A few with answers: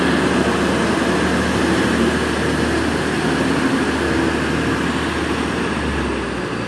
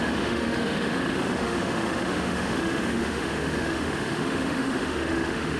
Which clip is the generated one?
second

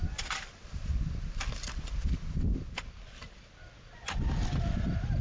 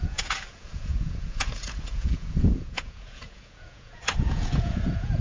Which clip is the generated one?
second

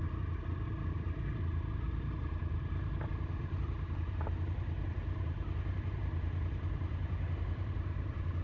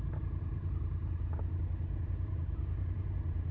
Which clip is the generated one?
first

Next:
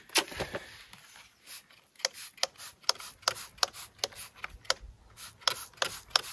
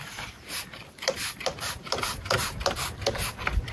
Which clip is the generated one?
second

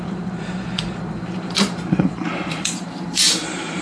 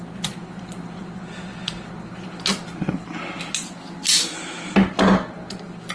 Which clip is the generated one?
first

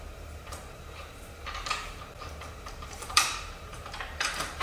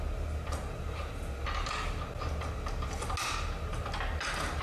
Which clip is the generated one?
first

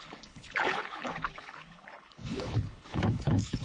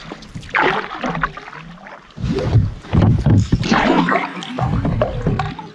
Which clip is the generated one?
first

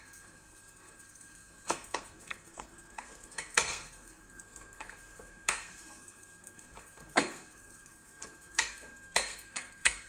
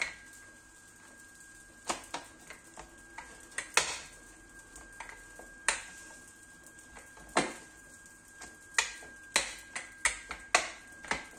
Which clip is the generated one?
first